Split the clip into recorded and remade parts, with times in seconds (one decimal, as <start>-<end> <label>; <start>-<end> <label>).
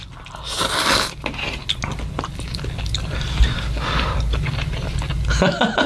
0.0-5.9 recorded